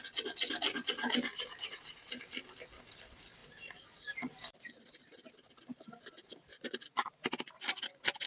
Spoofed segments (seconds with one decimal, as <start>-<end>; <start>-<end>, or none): 1.3-2.4; 3.4-5.3; 6.5-7.5